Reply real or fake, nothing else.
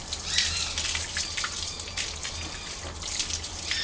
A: real